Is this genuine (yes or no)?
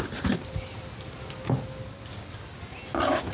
yes